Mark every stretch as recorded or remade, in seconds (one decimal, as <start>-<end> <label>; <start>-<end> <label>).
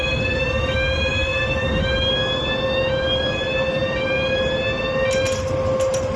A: 0.0-6.2 recorded